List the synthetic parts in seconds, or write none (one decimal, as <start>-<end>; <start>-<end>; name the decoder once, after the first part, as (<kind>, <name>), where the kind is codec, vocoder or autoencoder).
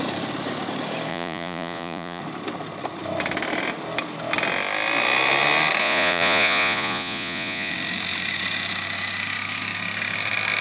1.1-2.2 (vocoder, Vocos); 5.8-7.7